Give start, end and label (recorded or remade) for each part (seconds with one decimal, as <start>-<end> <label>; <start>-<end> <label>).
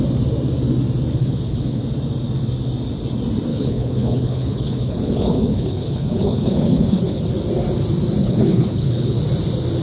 0.0-1.2 recorded; 1.2-1.8 remade; 1.8-3.5 recorded; 3.5-7.3 remade; 7.3-8.2 recorded; 8.2-9.2 remade; 9.2-9.8 recorded